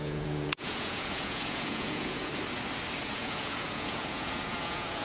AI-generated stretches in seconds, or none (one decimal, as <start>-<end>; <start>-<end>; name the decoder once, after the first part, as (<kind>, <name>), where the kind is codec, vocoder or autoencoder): 0.0-2.3 (vocoder, Vocos); 3.0-5.0